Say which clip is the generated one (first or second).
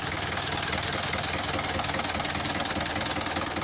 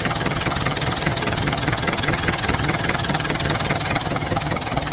second